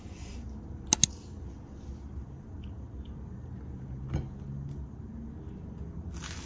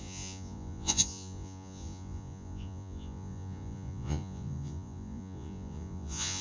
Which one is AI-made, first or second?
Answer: second